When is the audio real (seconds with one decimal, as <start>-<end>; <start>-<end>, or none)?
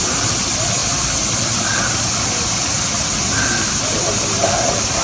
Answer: 0.0-0.8; 2.8-5.0